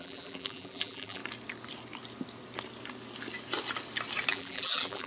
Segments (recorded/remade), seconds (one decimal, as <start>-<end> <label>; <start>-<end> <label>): 0.0-1.2 remade; 1.2-4.3 recorded; 4.3-5.1 remade